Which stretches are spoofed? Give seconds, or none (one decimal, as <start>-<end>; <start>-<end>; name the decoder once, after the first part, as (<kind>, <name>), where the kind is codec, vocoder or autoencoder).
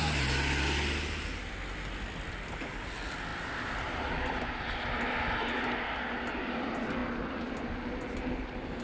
none